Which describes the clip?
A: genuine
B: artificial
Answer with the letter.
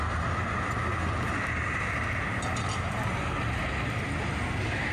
A